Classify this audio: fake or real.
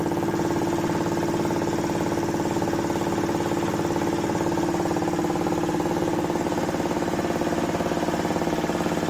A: real